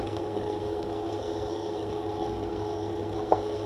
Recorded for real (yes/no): no